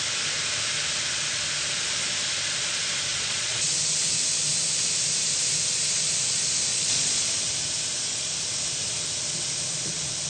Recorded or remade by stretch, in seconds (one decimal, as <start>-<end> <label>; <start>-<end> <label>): 0.0-3.1 recorded; 3.1-3.7 remade; 3.7-6.7 recorded; 6.7-7.3 remade; 7.3-10.3 recorded